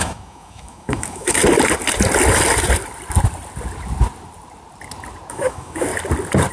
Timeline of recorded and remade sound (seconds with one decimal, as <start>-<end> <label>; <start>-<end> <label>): 0.0-1.4 remade; 1.4-5.3 recorded; 5.3-5.9 remade; 5.9-6.5 recorded